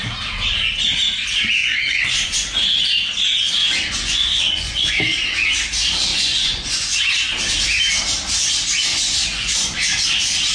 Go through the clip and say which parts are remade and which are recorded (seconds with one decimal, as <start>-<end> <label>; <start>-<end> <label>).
0.0-1.6 recorded; 1.6-2.6 remade; 2.6-3.6 recorded; 3.6-5.0 remade; 5.0-6.1 recorded; 6.1-7.0 remade; 7.0-8.9 recorded; 8.9-9.8 remade; 9.8-10.5 recorded